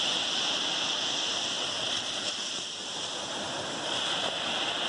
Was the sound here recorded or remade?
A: recorded